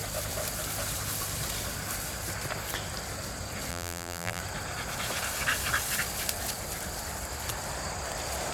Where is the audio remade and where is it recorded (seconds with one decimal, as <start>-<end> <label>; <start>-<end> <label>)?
0.0-3.7 recorded; 3.7-4.4 remade; 4.4-8.5 recorded